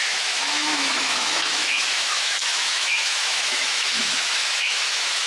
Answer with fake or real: fake